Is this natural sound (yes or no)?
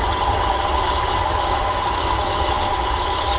no